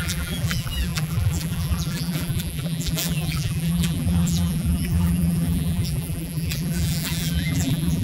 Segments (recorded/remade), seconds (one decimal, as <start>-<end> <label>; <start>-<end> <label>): 0.0-8.0 remade